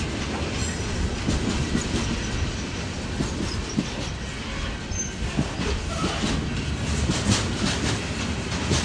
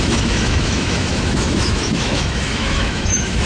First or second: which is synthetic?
second